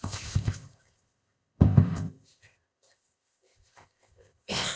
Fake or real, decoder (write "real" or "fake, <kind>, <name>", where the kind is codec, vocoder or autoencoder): fake, codec, ZipCodec